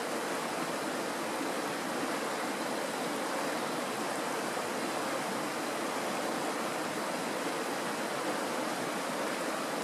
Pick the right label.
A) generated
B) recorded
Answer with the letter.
B